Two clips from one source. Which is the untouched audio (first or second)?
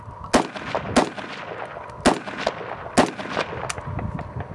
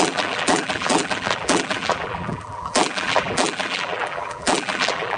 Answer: first